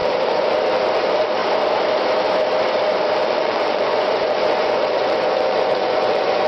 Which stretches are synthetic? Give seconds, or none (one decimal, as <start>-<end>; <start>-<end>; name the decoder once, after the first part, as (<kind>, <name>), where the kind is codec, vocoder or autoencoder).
0.0-0.5 (vocoder, Vocos); 3.2-6.5